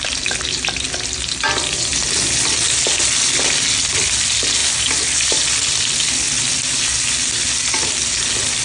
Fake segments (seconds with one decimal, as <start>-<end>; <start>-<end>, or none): none

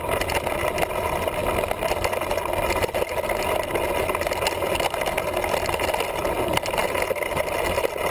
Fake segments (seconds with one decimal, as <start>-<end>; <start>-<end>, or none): none

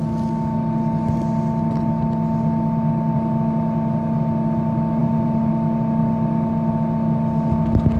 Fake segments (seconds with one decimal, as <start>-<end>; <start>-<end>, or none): 5.0-5.5

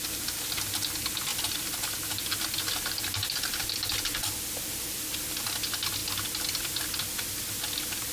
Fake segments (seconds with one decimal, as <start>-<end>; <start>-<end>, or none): none

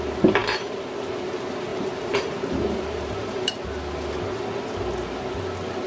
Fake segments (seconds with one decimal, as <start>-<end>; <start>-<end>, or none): 1.7-3.5

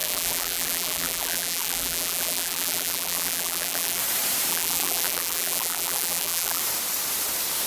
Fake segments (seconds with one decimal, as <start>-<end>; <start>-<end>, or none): 0.0-4.0; 4.5-6.6

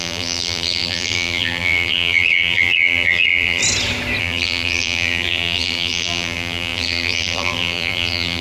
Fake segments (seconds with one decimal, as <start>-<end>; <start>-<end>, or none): 0.0-3.6; 4.2-8.4

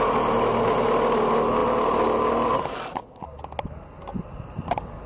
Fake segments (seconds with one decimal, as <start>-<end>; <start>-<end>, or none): none